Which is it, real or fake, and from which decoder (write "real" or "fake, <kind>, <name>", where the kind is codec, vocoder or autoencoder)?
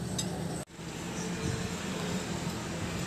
real